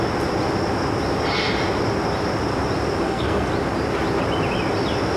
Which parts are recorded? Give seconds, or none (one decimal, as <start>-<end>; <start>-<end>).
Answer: 0.0-3.0; 3.5-5.2